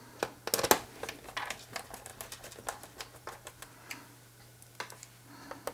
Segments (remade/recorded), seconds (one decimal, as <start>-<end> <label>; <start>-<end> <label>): 0.0-5.7 recorded